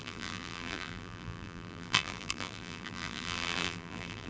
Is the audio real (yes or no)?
no